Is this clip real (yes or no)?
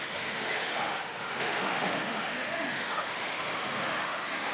no